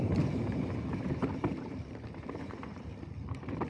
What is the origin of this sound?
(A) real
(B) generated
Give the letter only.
B